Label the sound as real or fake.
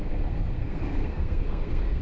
fake